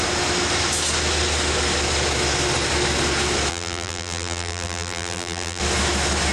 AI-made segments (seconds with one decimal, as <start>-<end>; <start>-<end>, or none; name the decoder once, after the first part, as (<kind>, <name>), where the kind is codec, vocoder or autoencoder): 3.5-5.6 (vocoder, BigVGAN v2)